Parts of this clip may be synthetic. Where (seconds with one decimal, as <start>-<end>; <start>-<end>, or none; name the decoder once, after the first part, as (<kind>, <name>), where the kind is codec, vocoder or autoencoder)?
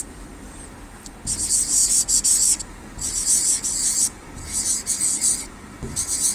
1.8-4.6 (vocoder, BigVGAN v2)